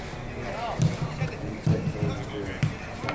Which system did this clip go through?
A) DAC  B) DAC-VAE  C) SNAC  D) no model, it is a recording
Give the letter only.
D